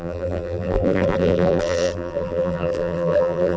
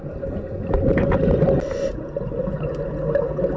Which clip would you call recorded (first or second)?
second